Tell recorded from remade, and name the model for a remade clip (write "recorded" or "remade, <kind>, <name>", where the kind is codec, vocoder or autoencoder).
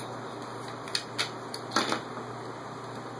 recorded